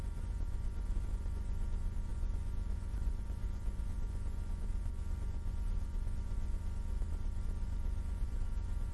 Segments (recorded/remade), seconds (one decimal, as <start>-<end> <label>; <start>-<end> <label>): 0.0-8.9 remade